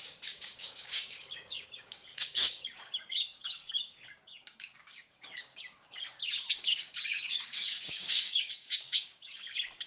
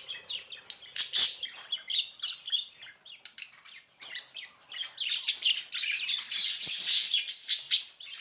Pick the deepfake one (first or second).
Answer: first